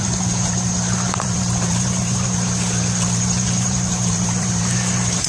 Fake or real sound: fake